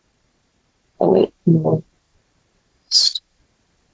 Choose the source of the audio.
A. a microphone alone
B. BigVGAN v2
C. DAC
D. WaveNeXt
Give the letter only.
B